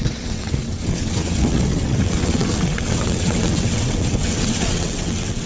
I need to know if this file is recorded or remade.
remade